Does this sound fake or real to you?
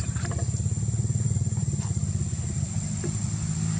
real